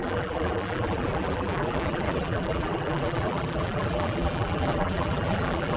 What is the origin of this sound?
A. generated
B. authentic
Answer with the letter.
A